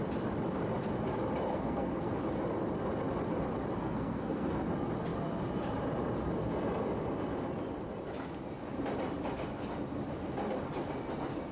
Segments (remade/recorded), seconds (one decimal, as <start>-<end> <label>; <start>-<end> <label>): 0.0-1.5 recorded; 1.5-2.2 remade; 2.2-3.8 recorded; 3.8-4.6 remade; 4.6-11.5 recorded